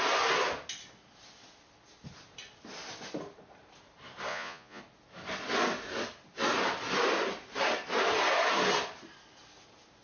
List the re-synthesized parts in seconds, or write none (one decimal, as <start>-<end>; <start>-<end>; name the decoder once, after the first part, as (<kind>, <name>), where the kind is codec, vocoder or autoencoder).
4.3-4.8 (vocoder, Vocos)